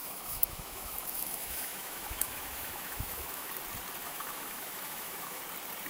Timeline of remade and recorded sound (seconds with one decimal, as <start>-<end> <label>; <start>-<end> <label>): 0.0-3.5 remade; 3.5-4.0 recorded; 4.0-5.4 remade; 5.4-5.9 recorded